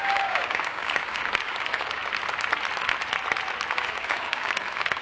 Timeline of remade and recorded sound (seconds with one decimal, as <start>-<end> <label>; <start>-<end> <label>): 0.0-2.0 remade; 2.0-3.7 recorded; 3.7-5.0 remade